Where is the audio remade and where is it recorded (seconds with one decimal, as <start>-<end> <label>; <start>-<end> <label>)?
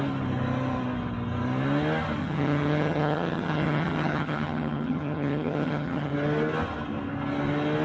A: 0.0-2.2 recorded; 2.2-6.1 remade; 6.1-7.8 recorded